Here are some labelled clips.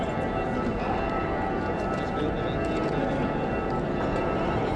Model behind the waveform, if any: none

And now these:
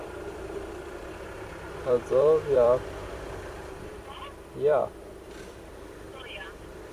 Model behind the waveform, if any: vocoder, BigVGAN v2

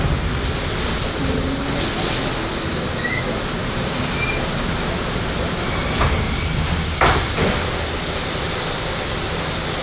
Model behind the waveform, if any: none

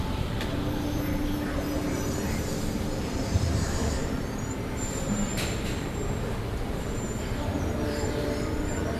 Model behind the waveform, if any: vocoder, BigVGAN v2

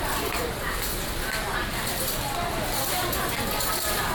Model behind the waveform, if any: vocoder, BigVGAN v2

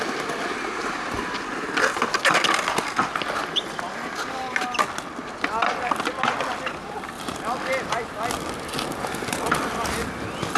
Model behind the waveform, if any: none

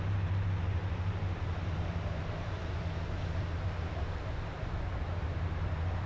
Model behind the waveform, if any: vocoder, BigVGAN v2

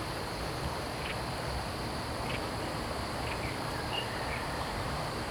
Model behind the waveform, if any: vocoder, BigVGAN v2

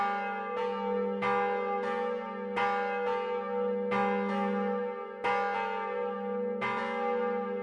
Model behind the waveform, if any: none